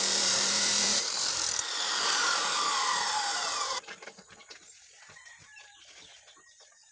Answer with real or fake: fake